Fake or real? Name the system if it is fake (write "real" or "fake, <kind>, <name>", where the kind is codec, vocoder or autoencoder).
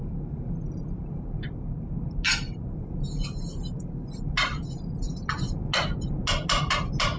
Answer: real